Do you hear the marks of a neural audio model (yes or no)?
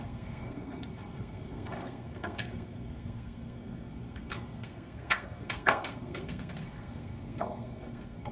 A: yes